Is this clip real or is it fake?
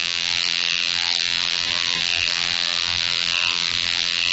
fake